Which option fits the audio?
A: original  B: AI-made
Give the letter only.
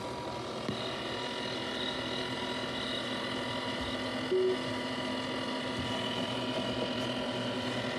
A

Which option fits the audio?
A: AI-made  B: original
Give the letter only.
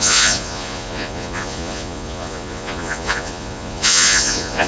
A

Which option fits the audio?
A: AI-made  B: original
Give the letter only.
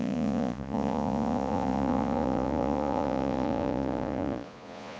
A